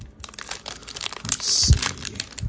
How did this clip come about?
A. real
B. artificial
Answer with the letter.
A